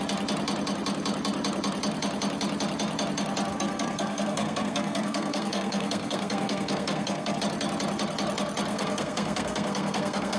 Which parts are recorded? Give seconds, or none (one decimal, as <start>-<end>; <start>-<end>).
0.0-3.5; 7.4-8.7